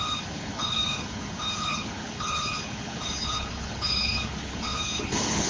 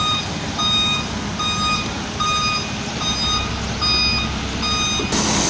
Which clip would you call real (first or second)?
second